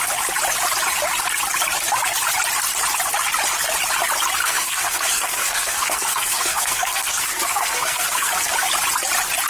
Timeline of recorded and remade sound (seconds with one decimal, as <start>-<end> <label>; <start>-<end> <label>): 0.0-4.4 recorded; 4.4-8.5 remade; 8.5-9.5 recorded